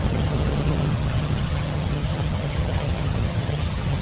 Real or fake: fake